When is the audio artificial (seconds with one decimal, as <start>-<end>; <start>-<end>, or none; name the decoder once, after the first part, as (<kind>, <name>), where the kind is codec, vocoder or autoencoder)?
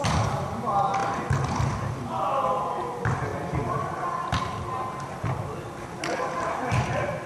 none